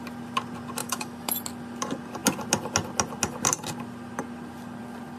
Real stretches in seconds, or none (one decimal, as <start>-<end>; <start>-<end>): 0.0-0.8; 1.3-5.2